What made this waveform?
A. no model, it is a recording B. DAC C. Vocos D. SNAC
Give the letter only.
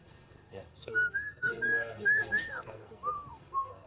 D